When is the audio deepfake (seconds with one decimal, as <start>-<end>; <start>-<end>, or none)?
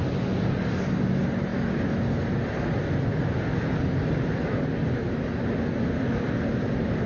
none